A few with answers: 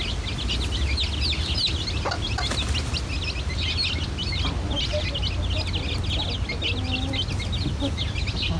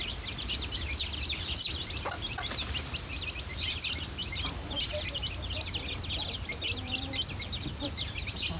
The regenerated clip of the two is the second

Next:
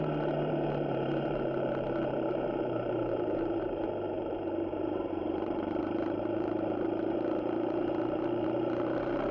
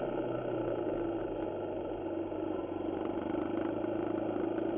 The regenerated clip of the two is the first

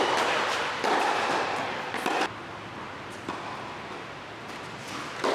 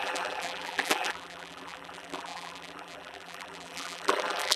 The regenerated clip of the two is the second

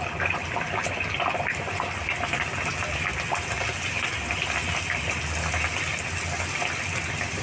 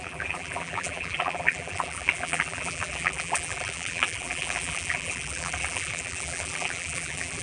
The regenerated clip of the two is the second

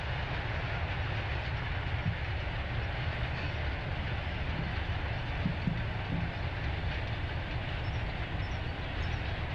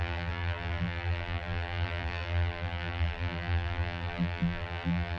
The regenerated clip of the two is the second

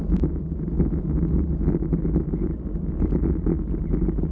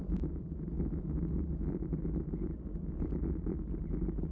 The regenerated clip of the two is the second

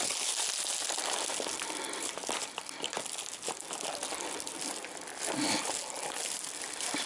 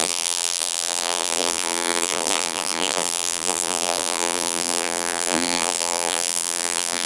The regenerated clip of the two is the second